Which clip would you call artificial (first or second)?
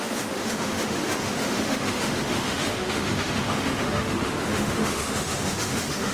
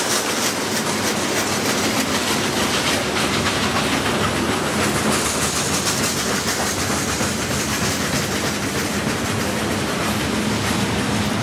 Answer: first